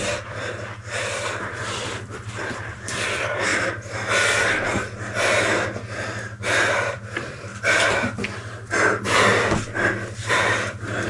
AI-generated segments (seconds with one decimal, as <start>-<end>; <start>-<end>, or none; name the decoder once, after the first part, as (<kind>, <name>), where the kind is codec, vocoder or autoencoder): 0.0-3.5 (vocoder, BigVGAN v2); 6.7-7.5; 10.3-11.1

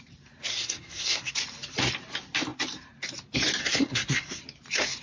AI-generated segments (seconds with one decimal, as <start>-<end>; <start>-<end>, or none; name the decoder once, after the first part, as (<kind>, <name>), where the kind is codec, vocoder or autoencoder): 0.5-1.3 (codec, SNAC); 3.6-4.4

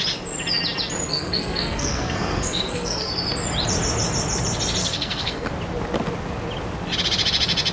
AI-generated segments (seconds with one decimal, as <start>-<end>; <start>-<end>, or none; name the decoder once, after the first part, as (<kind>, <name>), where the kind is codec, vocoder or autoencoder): 1.1-3.1 (codec, SNAC); 4.8-5.5

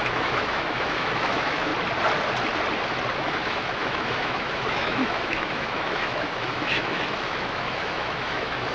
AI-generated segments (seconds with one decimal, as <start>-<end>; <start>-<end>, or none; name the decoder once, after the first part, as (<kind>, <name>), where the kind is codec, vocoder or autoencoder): 0.0-1.7 (autoencoder, DAC-VAE); 3.2-8.7